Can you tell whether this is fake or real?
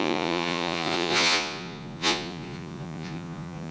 fake